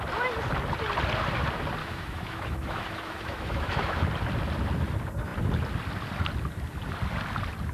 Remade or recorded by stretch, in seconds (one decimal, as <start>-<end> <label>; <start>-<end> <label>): 0.0-1.8 recorded; 1.8-4.0 remade; 4.0-7.7 recorded